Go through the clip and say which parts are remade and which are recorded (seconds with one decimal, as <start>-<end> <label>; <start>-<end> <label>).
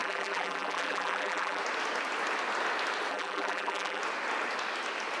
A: 0.0-1.6 remade; 1.6-3.1 recorded; 3.1-4.0 remade; 4.0-5.2 recorded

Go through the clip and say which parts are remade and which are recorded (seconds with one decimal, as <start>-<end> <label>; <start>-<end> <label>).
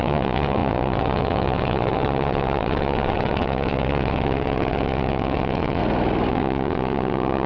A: 0.0-5.8 remade; 5.8-6.3 recorded; 6.3-7.5 remade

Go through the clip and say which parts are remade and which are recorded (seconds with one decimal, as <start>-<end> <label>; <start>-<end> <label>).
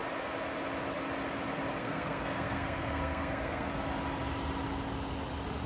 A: 0.0-1.8 recorded; 1.8-3.7 remade; 3.7-5.7 recorded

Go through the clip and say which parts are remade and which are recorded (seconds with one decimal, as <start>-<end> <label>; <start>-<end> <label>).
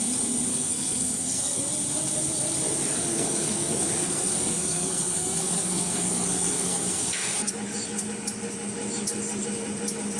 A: 0.0-0.5 recorded; 0.5-1.6 remade; 1.6-3.1 recorded; 3.1-7.5 remade; 7.5-10.2 recorded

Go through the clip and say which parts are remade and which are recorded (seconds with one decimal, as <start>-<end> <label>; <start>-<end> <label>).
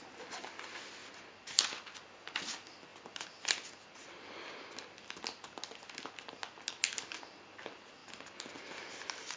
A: 0.0-9.4 recorded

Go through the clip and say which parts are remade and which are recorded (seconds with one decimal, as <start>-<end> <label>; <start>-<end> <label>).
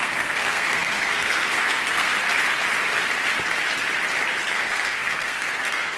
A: 0.0-2.1 remade; 2.1-4.5 recorded; 4.5-6.0 remade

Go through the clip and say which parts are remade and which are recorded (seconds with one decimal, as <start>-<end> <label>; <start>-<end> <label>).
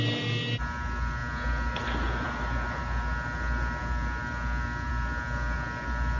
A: 0.0-6.2 recorded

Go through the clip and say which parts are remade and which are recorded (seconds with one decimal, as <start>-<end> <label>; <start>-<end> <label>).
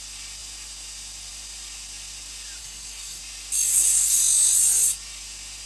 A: 0.0-2.6 recorded; 2.6-3.2 remade; 3.2-3.7 recorded; 3.7-4.2 remade; 4.2-5.7 recorded